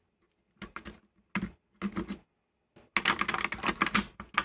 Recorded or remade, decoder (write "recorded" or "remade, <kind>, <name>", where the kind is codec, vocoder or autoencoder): recorded